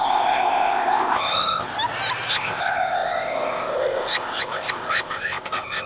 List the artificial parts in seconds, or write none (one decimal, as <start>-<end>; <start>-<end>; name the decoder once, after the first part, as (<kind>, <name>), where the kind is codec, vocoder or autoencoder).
0.0-1.7 (codec, ZipCodec); 2.3-5.9